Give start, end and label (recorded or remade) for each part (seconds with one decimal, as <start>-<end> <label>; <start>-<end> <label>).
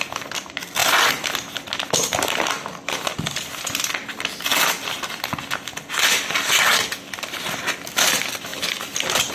0.0-9.3 recorded